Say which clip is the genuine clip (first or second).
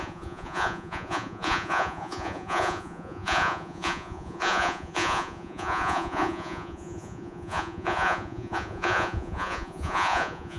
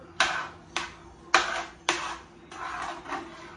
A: second